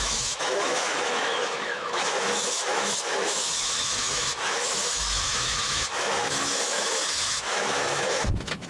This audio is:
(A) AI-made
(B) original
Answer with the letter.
A